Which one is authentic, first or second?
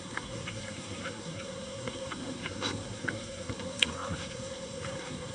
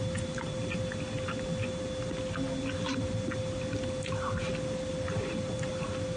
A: second